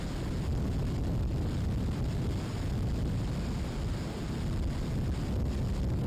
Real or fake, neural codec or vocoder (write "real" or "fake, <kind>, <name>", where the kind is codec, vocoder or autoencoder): real